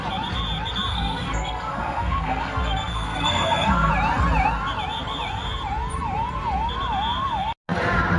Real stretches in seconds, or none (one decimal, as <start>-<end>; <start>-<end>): 0.0-0.9; 3.9-8.2